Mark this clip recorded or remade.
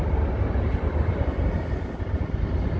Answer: recorded